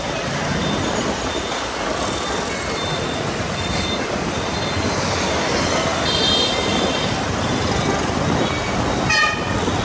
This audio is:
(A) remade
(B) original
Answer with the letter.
B